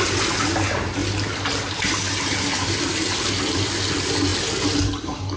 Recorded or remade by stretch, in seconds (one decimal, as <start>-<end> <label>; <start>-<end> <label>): 0.0-1.0 recorded; 1.0-3.3 remade; 3.3-5.4 recorded